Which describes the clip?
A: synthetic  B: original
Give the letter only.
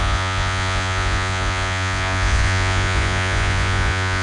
A